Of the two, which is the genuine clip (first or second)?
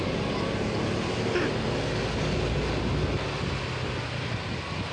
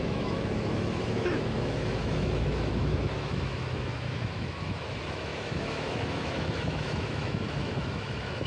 first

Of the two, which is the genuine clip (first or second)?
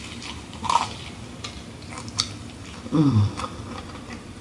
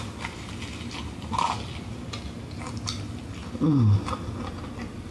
second